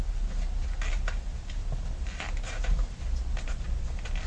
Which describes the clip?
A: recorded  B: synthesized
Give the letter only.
A